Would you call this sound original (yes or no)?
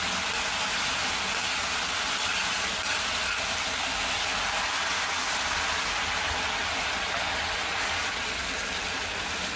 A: yes